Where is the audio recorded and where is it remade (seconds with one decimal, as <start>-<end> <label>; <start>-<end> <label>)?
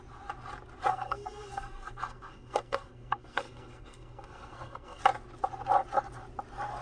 0.0-0.9 recorded; 0.9-5.0 remade; 5.0-6.8 recorded